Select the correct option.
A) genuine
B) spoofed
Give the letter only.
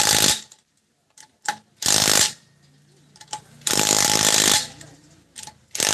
A